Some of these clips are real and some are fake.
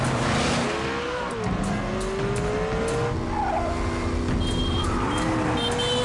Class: real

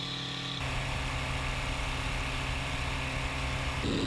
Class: real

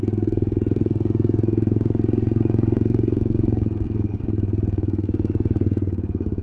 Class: fake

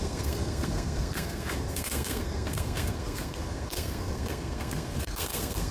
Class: fake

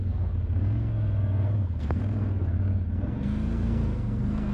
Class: fake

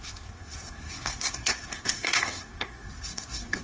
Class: fake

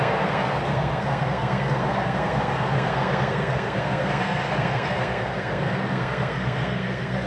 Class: fake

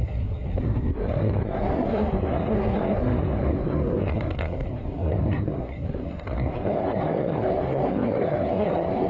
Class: fake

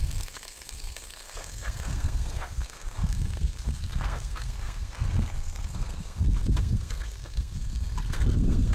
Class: fake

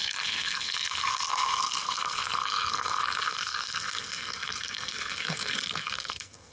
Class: fake